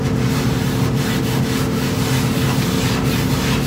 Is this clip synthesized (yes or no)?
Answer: no